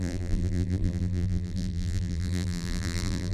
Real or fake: fake